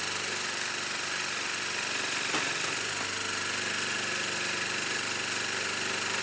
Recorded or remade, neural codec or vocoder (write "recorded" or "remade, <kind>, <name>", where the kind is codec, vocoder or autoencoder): recorded